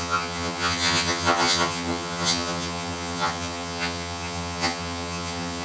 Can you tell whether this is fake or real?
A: fake